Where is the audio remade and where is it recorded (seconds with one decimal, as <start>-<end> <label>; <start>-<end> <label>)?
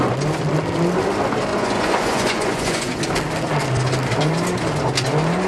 0.0-1.5 recorded; 1.5-3.0 remade; 3.0-5.5 recorded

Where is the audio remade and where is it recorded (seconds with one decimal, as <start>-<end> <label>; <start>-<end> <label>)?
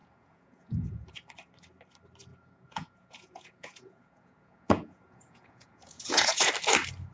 0.0-1.2 remade; 1.2-2.3 recorded; 2.3-6.5 remade; 6.5-7.1 recorded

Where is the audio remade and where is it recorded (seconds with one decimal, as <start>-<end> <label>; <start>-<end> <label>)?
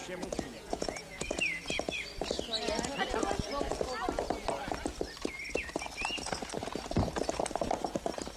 0.0-1.4 remade; 1.4-8.4 recorded